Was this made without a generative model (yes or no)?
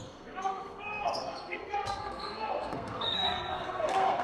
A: no